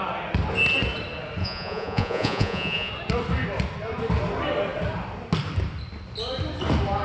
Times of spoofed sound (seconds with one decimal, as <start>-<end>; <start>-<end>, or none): 1.4-2.9

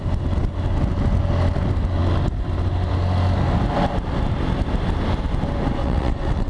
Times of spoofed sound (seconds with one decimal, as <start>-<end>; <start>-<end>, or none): 5.8-6.5

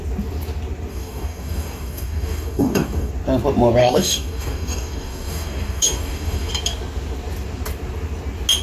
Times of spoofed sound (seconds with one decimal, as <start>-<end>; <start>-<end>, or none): 0.9-3.1; 3.8-6.5